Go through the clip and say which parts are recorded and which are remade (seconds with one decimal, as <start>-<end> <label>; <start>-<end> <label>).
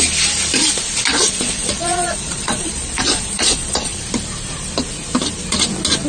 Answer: 0.0-1.1 recorded; 1.1-4.0 remade; 4.0-6.1 recorded